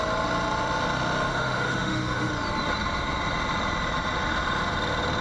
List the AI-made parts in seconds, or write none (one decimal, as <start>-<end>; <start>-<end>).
1.3-2.3